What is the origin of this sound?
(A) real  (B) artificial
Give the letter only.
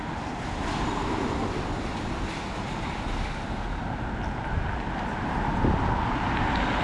A